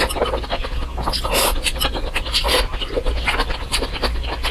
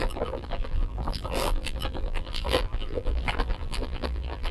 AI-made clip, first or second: second